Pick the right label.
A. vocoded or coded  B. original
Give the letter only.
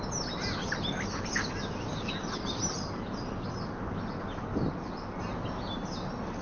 B